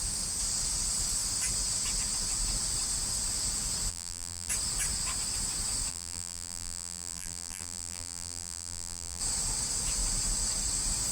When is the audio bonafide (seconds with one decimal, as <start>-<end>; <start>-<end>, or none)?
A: 0.0-3.9; 4.5-5.9; 9.2-11.1